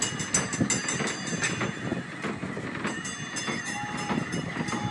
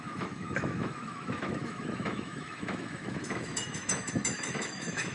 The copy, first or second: second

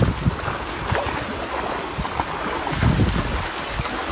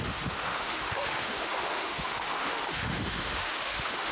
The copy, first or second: second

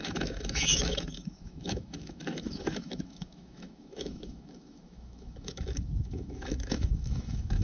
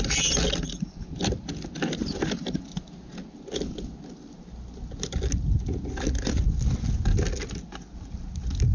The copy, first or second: first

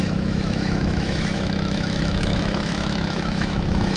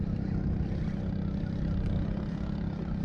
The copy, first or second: first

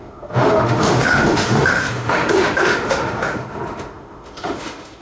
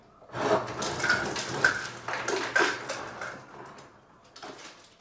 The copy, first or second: first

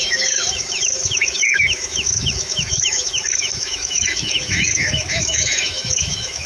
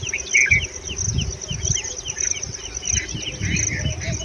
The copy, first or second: first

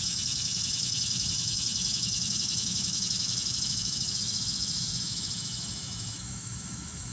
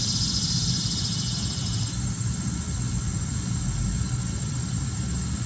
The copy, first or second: first